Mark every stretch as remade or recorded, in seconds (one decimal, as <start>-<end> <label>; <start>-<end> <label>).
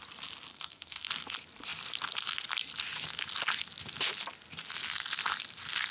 0.0-0.5 recorded; 0.5-1.1 remade; 1.1-5.9 recorded